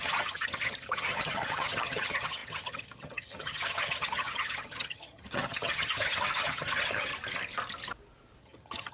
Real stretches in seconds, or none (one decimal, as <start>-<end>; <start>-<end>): 7.1-8.4